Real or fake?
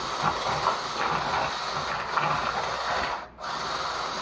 real